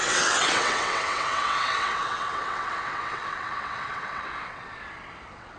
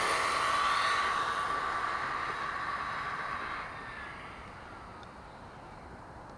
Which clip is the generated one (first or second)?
first